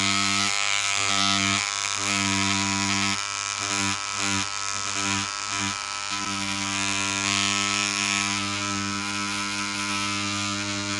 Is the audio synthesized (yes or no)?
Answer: no